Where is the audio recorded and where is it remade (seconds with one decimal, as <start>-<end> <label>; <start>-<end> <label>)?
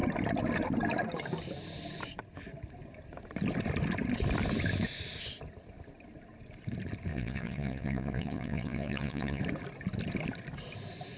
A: 0.0-7.1 recorded; 7.1-9.4 remade; 9.4-11.2 recorded